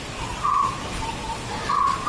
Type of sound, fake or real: real